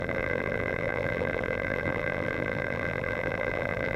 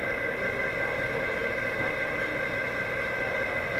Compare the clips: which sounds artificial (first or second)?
first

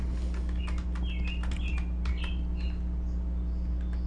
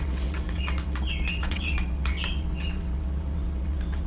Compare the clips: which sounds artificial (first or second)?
second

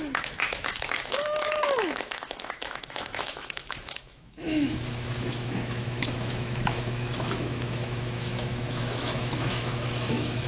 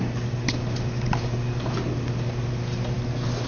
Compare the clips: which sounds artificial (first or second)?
first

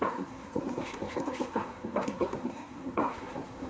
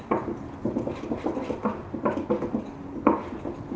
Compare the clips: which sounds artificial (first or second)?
first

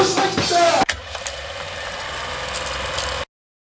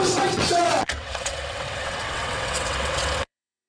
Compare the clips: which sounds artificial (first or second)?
second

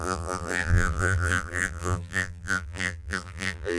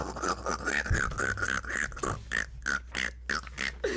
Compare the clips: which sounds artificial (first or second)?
first